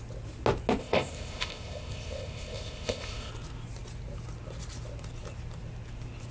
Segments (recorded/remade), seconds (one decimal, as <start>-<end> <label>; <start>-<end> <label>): 0.0-0.8 recorded; 0.8-3.3 remade; 3.3-6.3 recorded